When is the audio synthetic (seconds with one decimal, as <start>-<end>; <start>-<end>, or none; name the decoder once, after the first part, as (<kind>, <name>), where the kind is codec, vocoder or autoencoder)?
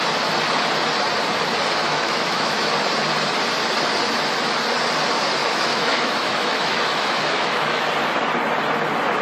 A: 1.8-2.7 (autoencoder, DAC-VAE); 5.4-7.9